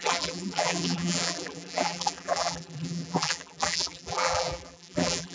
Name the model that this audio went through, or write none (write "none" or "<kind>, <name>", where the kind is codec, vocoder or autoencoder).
vocoder, BigVGAN v2